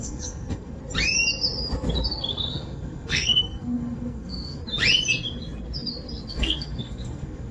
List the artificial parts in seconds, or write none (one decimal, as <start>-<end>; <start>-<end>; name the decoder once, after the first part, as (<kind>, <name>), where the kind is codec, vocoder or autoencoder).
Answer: 0.0-0.8 (codec, SNAC); 2.3-4.6; 6.3-7.5